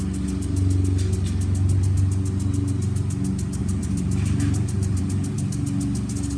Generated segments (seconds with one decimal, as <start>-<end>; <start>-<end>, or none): 3.6-5.0